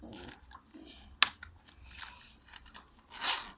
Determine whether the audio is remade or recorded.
recorded